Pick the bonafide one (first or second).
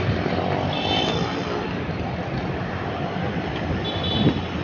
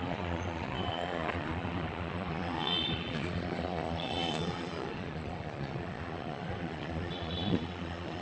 first